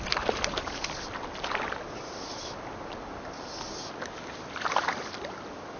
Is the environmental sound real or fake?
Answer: real